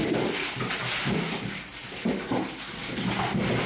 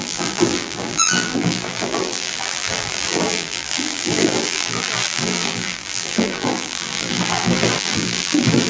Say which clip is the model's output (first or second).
second